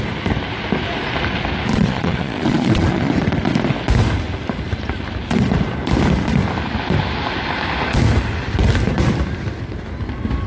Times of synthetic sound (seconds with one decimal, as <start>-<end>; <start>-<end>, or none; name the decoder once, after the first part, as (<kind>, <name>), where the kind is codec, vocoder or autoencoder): 1.7-3.1 (vocoder, Vocos)